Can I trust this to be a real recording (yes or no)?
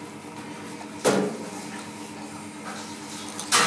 yes